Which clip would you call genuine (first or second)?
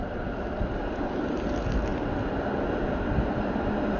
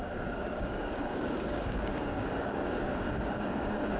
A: first